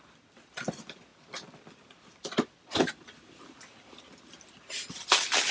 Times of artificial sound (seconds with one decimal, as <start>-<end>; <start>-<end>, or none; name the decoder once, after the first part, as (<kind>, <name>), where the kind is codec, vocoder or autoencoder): none